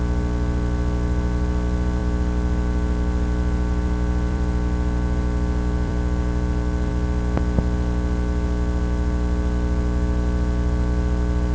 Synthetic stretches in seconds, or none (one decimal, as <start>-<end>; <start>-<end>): 2.0-6.9